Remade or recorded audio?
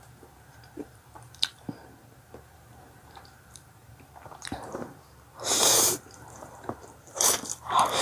remade